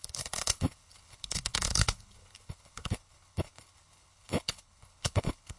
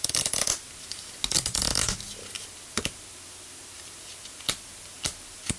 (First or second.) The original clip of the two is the second